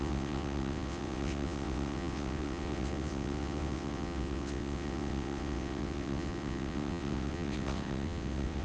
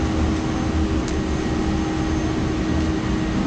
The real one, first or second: second